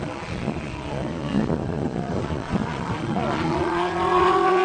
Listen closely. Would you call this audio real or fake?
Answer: fake